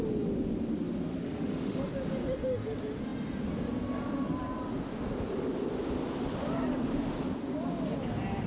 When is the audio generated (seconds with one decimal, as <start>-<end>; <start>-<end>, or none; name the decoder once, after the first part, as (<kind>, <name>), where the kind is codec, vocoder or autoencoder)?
1.1-1.8 (autoencoder, DAC-VAE)